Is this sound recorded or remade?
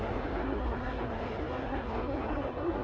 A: remade